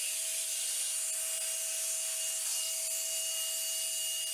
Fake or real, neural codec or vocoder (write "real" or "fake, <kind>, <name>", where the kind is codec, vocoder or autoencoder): real